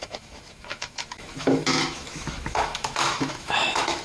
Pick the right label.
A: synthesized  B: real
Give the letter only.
A